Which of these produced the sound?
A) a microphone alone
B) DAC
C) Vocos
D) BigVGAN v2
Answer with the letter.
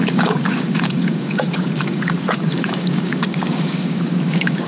B